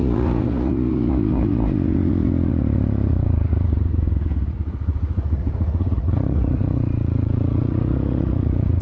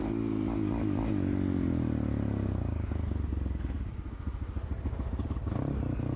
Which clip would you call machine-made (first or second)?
first